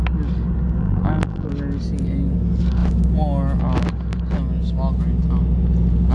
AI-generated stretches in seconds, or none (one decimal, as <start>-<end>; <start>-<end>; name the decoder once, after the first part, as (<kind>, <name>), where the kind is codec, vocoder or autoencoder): 0.8-1.5 (vocoder, BigVGAN v2)